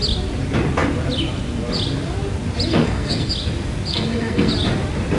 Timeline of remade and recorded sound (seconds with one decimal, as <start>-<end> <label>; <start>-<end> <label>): 0.0-2.7 recorded; 2.7-3.3 remade; 3.3-3.9 recorded; 3.9-4.5 remade; 4.5-5.2 recorded